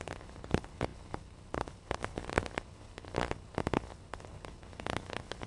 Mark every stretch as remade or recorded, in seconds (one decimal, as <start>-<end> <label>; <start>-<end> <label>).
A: 0.0-5.5 remade